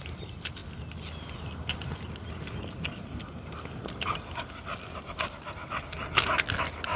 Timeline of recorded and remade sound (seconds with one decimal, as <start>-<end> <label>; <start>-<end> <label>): 0.0-7.0 recorded